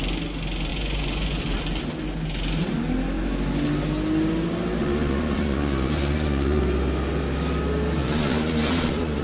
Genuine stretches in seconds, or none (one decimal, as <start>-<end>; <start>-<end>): 0.0-0.7; 1.4-4.8; 6.6-8.0